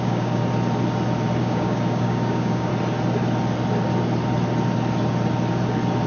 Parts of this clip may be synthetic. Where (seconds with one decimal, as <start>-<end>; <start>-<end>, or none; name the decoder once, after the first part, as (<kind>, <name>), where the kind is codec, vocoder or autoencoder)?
0.0-0.4 (codec, DAC); 1.4-2.7